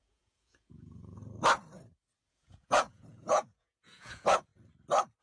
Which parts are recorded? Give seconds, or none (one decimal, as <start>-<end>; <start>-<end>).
1.2-2.3; 4.5-5.2